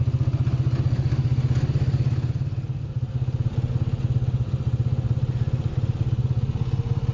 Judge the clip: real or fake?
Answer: real